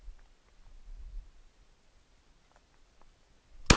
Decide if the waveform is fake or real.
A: real